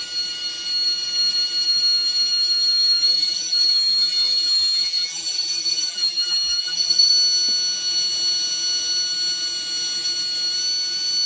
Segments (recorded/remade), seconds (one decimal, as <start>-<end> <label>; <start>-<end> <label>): 0.0-3.1 recorded; 3.1-7.1 remade; 7.1-11.3 recorded